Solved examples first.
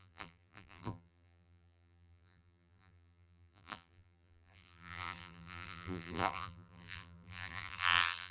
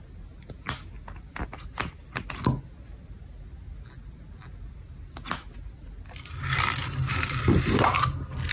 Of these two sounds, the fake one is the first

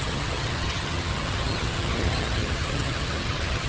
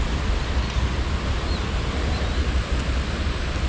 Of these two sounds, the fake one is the first